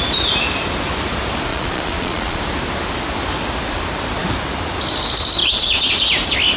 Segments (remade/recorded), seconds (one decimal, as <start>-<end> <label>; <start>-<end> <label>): 0.0-1.5 recorded; 1.5-2.4 remade; 2.4-5.4 recorded; 5.4-5.9 remade; 5.9-6.6 recorded